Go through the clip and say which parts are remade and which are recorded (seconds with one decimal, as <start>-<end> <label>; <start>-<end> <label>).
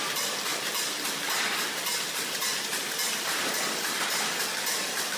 0.0-5.2 remade